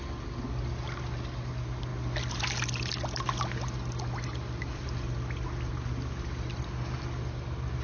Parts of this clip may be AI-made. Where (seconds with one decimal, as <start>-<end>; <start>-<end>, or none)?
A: none